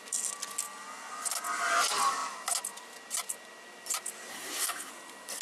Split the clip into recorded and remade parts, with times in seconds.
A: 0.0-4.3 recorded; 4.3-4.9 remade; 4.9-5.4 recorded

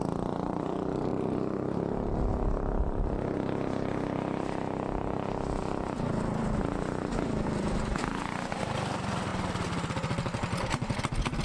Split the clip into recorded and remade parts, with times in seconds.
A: 0.0-1.1 remade; 1.1-5.6 recorded; 5.6-9.3 remade; 9.3-11.0 recorded; 11.0-11.4 remade

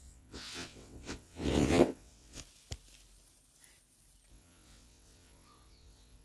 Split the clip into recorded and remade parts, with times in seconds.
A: 0.0-2.4 remade; 2.4-4.3 recorded; 4.3-6.2 remade

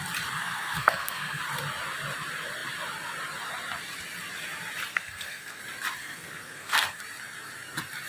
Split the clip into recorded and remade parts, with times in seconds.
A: 0.0-0.4 recorded; 0.4-1.4 remade; 1.4-4.9 recorded; 4.9-5.6 remade; 5.6-6.0 recorded; 6.0-7.0 remade; 7.0-8.1 recorded